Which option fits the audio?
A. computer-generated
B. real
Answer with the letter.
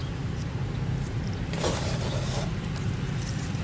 B